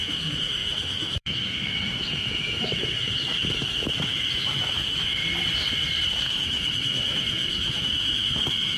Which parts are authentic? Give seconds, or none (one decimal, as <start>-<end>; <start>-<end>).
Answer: 5.2-6.1